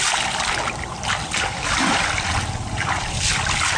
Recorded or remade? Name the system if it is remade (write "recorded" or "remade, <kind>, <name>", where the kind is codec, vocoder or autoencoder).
recorded